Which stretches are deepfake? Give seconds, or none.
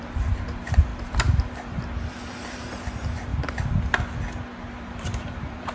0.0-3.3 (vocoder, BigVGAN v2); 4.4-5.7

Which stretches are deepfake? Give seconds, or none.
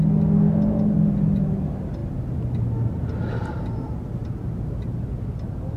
4.2-5.1 (vocoder, BigVGAN v2)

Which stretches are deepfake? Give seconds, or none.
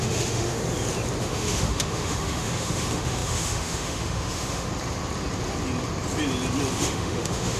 0.0-0.6 (autoencoder, DAC-VAE); 1.2-4.7; 6.7-7.6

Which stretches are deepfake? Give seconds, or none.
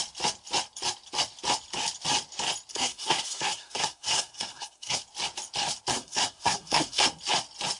2.7-5.0 (codec, SNAC); 5.9-7.0